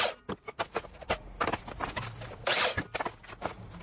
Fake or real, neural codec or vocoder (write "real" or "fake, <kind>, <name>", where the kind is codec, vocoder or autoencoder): real